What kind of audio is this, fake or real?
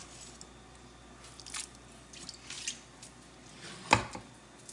real